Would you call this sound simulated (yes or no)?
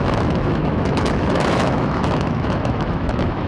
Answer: yes